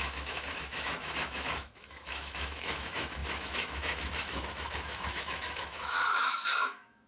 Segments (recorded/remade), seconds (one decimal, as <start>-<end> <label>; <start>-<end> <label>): 0.0-7.1 remade